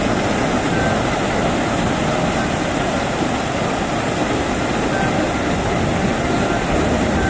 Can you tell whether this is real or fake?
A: real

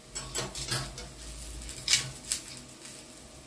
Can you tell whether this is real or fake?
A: real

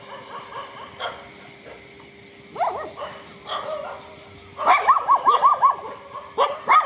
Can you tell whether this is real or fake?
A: real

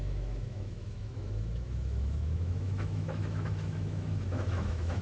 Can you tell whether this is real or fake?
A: fake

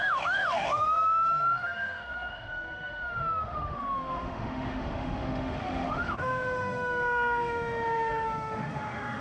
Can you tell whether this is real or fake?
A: fake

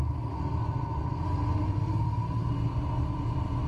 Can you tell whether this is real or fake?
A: real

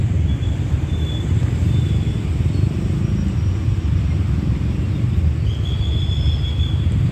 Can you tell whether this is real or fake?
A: real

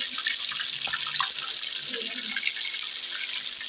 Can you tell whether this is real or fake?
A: real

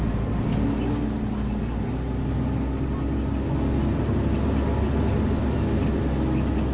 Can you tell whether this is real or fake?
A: real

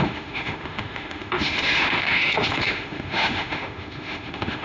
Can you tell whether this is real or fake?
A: fake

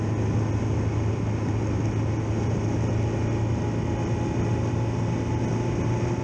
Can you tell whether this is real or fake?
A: real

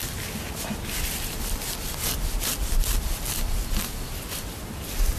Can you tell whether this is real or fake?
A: real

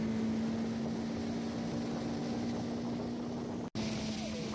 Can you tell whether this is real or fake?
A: real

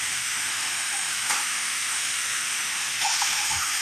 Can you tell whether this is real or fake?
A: fake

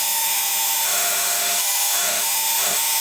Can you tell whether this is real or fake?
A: fake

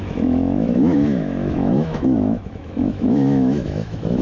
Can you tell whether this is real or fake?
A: fake